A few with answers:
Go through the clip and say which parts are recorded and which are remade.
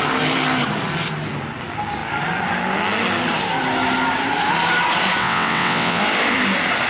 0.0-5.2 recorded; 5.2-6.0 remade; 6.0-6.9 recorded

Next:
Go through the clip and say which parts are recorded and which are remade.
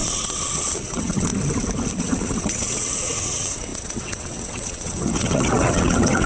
0.0-1.3 remade; 1.3-2.0 recorded; 2.0-6.3 remade